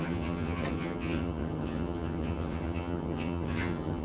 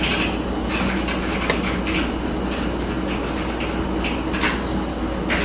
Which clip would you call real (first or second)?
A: second